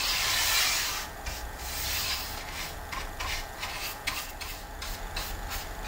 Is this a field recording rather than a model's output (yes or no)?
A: yes